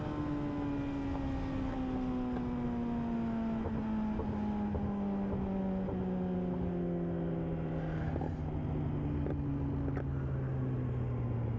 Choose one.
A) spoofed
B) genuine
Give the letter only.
B